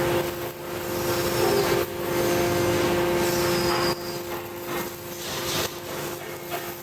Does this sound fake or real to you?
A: real